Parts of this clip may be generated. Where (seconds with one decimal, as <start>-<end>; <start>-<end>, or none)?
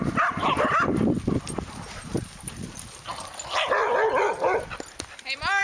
none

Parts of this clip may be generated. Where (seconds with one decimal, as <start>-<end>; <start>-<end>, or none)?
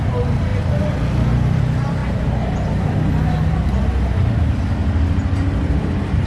0.0-2.0; 5.8-6.3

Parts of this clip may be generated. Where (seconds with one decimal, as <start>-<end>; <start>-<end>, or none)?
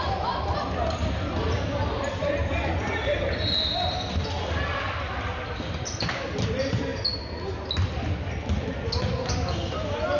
none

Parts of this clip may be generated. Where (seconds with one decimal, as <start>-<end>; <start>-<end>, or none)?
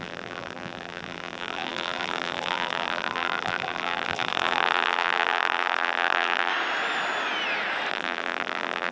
0.0-6.5; 7.9-8.9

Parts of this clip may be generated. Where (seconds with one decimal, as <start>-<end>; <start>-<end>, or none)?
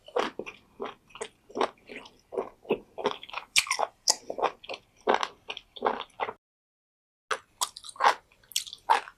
3.0-3.7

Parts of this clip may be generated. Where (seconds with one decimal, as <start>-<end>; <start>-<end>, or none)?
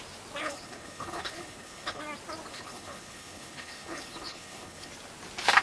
0.4-2.0; 2.5-4.9